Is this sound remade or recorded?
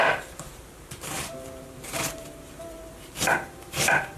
remade